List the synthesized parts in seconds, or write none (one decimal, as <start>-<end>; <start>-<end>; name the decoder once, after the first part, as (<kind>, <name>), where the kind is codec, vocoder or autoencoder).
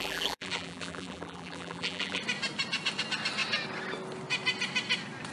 0.0-2.2 (vocoder, BigVGAN v2)